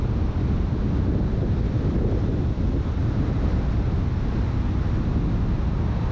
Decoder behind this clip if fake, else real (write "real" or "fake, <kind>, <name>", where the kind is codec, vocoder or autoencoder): real